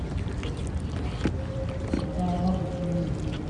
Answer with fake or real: real